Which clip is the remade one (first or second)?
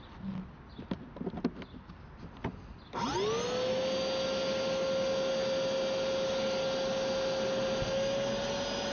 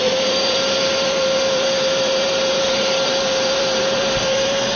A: second